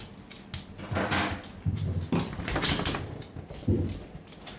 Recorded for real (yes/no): yes